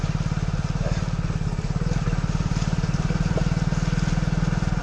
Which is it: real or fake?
real